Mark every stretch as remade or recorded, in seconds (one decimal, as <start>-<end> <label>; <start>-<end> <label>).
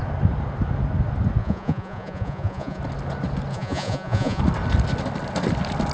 0.0-1.4 recorded; 1.4-2.8 remade; 2.8-3.5 recorded; 3.5-4.4 remade; 4.4-5.9 recorded